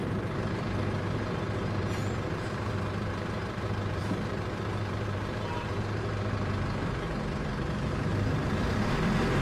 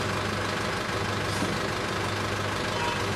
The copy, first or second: first